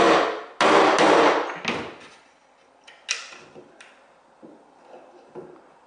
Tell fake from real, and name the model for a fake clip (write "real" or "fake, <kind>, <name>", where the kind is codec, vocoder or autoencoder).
real